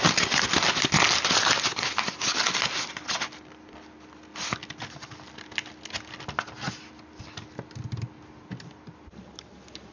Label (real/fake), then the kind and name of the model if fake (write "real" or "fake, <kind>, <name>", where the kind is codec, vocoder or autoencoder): real